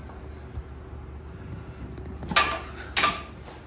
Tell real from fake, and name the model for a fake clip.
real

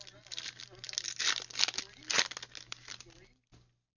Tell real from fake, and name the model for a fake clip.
real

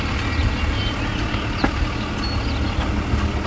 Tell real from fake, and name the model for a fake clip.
real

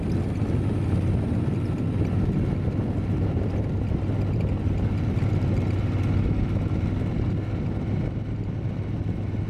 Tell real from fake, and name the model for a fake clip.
real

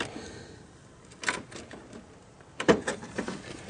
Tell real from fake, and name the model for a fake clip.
real